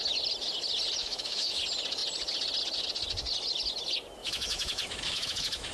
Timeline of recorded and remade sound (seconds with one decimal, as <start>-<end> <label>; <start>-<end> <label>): 0.0-1.0 recorded; 1.0-1.6 remade; 1.6-4.2 recorded; 4.2-5.7 remade